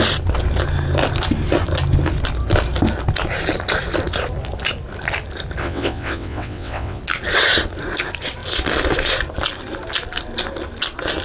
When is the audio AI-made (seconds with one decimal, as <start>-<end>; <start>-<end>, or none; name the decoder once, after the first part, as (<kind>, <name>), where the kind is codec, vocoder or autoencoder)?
5.6-7.0 (vocoder, WaveNeXt)